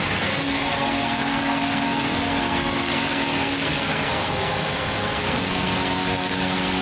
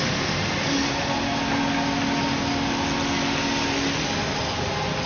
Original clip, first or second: second